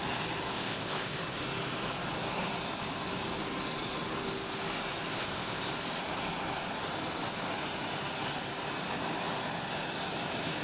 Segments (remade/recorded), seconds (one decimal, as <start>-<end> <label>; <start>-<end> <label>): 0.0-0.5 recorded; 0.5-1.2 remade; 1.2-5.1 recorded; 5.1-5.7 remade; 5.7-10.6 recorded